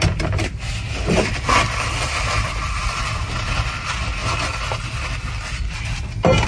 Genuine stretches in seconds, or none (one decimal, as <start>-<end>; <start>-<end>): 0.0-6.5